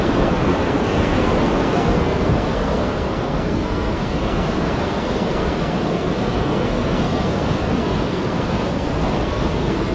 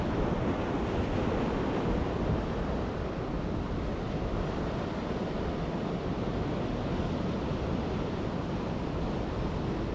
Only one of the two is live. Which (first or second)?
second